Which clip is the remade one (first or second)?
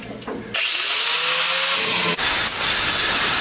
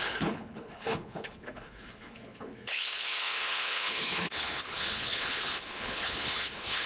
second